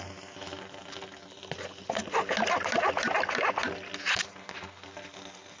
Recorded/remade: recorded